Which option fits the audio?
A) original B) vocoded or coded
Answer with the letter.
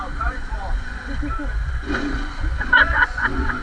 B